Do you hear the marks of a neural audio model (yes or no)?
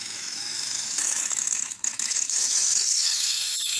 yes